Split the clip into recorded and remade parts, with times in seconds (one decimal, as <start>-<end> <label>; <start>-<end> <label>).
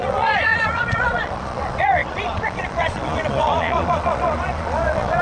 0.0-5.2 remade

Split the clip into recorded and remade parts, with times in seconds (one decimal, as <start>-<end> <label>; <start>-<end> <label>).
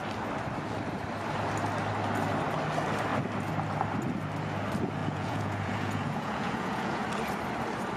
0.0-5.0 recorded; 5.0-7.0 remade; 7.0-8.0 recorded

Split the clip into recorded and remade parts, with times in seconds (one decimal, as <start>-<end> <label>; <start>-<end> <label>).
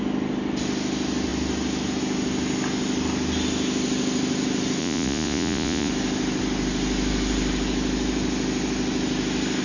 0.0-4.8 recorded; 4.8-5.9 remade; 5.9-9.6 recorded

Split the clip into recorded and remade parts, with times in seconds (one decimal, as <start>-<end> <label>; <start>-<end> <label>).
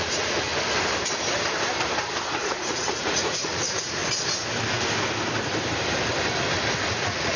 0.0-0.5 remade; 0.5-2.4 recorded; 2.4-4.0 remade; 4.0-6.7 recorded; 6.7-7.4 remade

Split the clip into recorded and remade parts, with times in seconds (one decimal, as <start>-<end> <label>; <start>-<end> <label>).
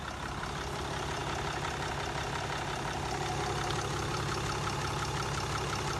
0.0-6.0 recorded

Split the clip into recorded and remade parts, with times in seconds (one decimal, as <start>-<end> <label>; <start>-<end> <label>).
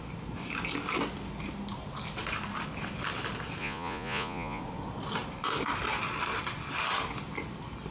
0.0-3.6 recorded; 3.6-4.6 remade; 4.6-7.9 recorded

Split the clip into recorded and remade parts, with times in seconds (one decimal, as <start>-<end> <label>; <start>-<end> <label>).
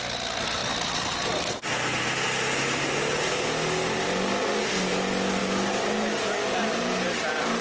0.0-7.6 recorded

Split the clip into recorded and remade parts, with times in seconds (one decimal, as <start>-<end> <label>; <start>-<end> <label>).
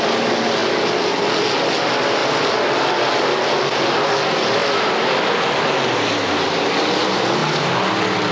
0.0-8.3 recorded